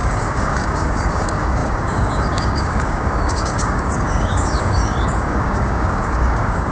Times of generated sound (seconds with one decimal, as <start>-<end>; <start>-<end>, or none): 0.0-6.7